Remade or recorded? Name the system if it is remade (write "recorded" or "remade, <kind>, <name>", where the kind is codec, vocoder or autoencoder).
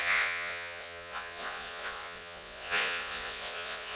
remade, vocoder, Vocos